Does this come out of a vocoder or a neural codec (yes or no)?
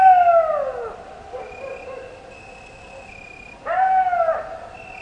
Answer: no